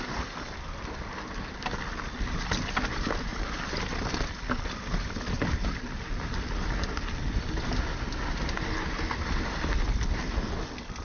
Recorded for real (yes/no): yes